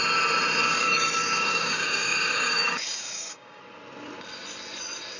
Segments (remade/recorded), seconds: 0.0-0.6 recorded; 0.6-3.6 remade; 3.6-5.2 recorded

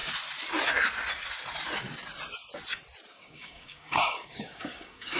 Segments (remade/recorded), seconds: 0.0-3.1 recorded; 3.1-5.2 remade